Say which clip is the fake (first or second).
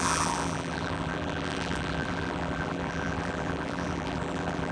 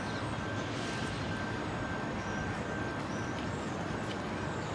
first